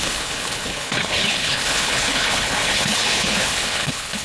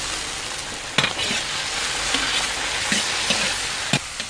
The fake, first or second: first